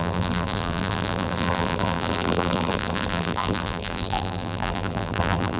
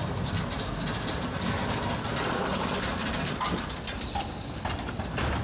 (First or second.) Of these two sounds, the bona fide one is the second